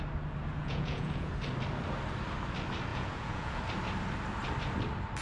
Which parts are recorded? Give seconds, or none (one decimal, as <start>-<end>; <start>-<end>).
0.0-0.6; 1.3-2.9; 3.6-5.2